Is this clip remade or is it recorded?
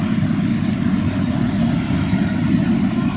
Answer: recorded